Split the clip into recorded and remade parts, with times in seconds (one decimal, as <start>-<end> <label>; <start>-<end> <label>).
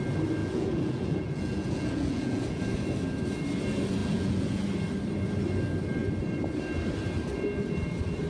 0.0-0.4 recorded; 0.4-2.6 remade; 2.6-4.0 recorded; 4.0-4.6 remade; 4.6-8.3 recorded